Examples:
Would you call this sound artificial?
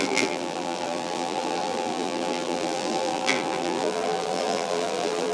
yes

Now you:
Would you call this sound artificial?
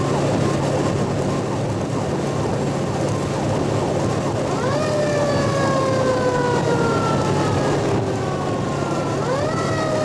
no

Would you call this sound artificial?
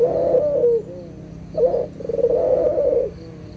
no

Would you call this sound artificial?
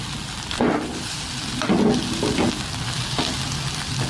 no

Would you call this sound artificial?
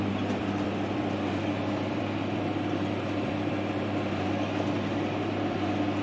yes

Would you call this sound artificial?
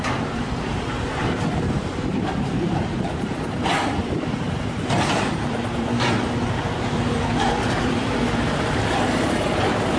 yes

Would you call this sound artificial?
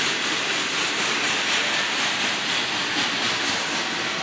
yes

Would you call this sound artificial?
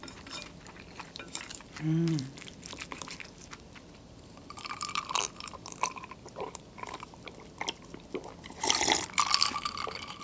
yes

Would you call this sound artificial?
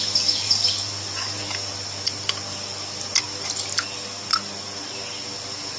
no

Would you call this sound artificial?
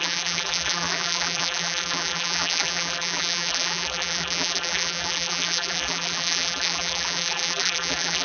yes